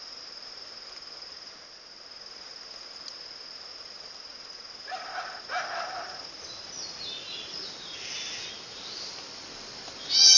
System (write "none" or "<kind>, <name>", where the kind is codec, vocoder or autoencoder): none